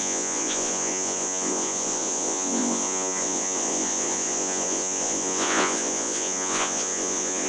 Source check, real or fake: fake